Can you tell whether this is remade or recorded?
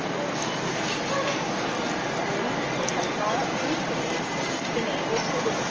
recorded